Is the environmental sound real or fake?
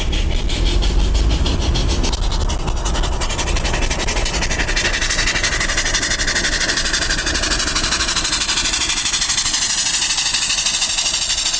real